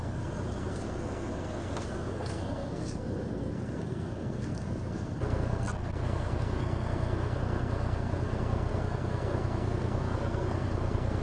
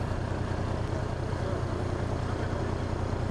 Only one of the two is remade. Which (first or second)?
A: first